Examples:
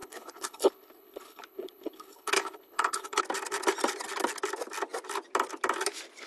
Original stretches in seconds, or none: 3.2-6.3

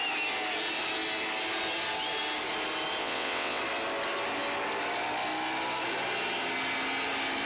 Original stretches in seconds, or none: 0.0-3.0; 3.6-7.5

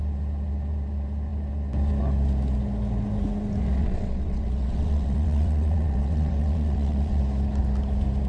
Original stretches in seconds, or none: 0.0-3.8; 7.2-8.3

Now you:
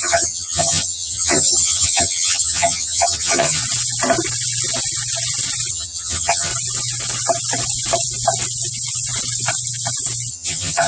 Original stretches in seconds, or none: 3.6-5.7; 6.5-10.3

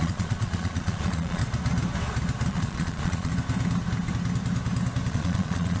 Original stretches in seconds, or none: 1.4-2.5; 3.3-5.1

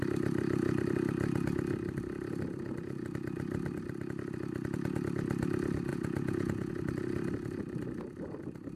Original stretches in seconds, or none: 0.0-5.9; 6.7-8.8

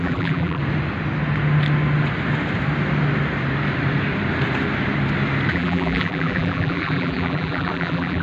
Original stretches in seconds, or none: 0.6-5.5

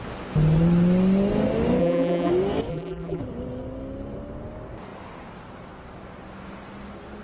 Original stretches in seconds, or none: 0.0-1.8; 2.3-2.7; 3.2-7.2